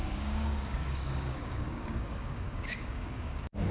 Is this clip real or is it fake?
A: fake